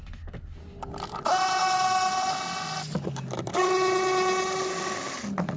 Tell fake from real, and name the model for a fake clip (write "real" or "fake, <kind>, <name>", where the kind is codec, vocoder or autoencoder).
real